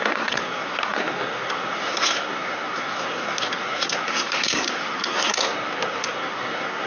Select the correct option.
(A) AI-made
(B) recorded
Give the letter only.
A